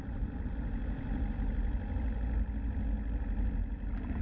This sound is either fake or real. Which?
real